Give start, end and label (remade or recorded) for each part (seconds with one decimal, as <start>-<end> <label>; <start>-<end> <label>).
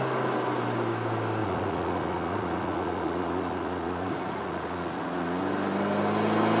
0.0-1.4 recorded; 1.4-5.4 remade; 5.4-6.6 recorded